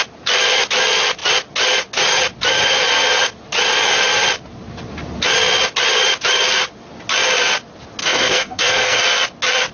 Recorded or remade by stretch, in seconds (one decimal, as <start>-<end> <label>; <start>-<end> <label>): 0.0-8.0 recorded; 8.0-9.0 remade; 9.0-9.7 recorded